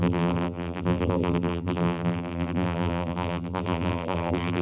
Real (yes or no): no